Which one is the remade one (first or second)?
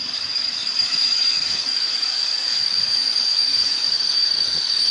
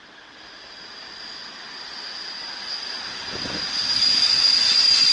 first